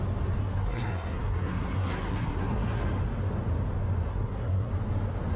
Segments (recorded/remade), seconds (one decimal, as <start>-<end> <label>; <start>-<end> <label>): 0.0-0.4 recorded; 0.4-2.8 remade; 2.8-4.1 recorded; 4.1-4.7 remade; 4.7-5.4 recorded